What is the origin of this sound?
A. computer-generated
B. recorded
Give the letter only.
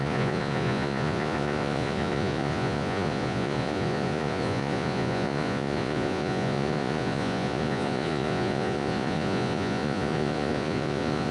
A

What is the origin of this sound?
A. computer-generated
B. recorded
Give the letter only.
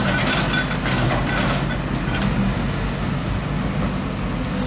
B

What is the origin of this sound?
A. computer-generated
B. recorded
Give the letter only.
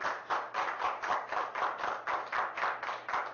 B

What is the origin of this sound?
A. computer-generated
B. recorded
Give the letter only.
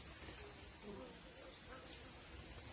B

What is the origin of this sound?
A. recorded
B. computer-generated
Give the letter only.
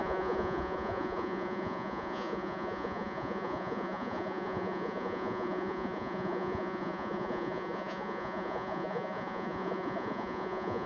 B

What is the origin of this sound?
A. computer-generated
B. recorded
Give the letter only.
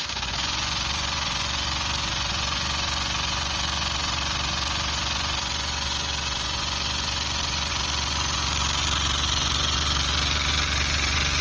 A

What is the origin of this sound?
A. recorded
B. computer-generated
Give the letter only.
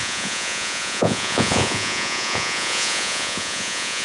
B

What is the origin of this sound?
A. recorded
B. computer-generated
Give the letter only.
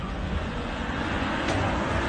B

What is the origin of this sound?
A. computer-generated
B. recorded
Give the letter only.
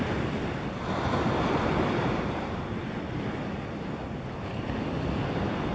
B